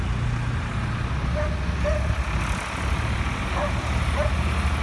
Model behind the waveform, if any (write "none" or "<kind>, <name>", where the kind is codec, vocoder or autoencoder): none